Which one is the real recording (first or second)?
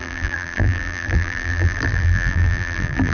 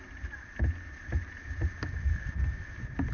second